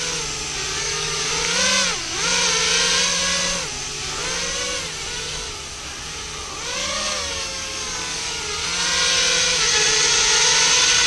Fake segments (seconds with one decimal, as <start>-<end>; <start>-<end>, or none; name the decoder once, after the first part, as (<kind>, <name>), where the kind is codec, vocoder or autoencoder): 0.8-1.3 (codec, DAC); 6.8-8.4

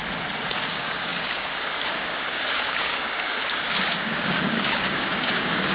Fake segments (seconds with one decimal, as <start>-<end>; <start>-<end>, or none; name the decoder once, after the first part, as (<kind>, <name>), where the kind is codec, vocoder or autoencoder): 0.7-5.7 (codec, DAC)

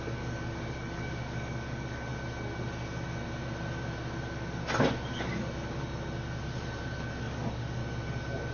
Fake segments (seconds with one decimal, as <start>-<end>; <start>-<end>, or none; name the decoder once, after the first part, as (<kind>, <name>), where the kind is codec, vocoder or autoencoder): 0.0-2.1 (codec, DAC); 7.2-7.8

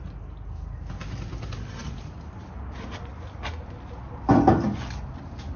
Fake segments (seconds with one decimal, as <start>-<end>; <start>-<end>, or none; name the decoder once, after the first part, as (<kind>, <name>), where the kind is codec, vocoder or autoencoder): none

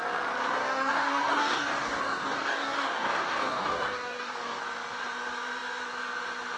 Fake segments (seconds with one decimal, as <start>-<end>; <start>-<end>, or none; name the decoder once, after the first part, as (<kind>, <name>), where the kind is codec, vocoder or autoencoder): 0.6-4.6 (codec, DAC)

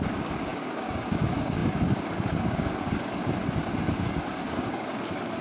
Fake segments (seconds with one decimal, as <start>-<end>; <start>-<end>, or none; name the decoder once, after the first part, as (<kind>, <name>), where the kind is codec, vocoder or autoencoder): 0.0-3.2 (codec, DAC); 3.8-5.4